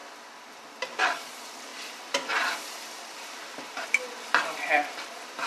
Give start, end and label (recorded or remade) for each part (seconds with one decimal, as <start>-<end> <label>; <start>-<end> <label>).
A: 0.0-0.5 recorded; 0.5-5.5 remade